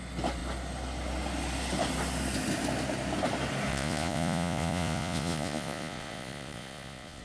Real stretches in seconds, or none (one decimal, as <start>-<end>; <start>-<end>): 0.0-3.7